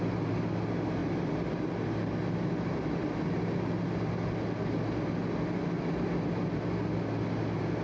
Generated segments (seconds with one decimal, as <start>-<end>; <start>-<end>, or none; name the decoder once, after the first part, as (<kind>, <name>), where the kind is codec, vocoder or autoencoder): none